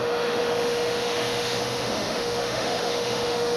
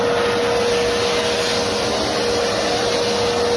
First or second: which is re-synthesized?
first